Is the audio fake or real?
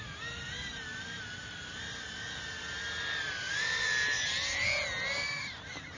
real